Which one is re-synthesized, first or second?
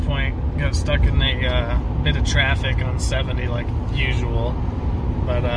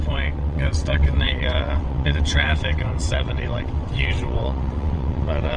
second